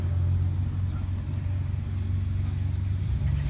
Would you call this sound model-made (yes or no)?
no